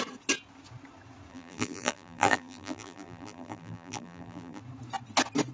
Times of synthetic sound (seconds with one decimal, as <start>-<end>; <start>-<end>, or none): 1.3-4.6